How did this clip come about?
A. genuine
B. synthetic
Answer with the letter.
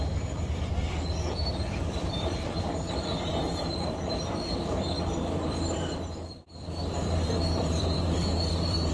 B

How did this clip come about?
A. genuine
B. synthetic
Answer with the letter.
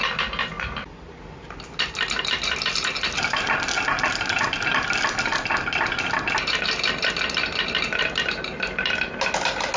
A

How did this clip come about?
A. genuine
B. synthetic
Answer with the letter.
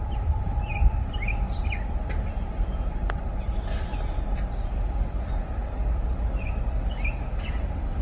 A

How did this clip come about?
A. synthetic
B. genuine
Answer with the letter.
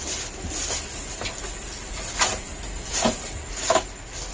B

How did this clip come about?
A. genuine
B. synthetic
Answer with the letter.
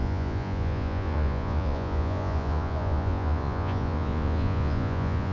B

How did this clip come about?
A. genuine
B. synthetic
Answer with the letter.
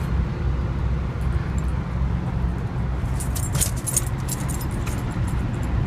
A